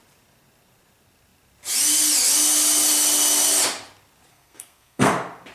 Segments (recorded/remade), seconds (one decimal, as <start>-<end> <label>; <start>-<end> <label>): 0.0-4.3 recorded; 4.3-5.1 remade; 5.1-5.5 recorded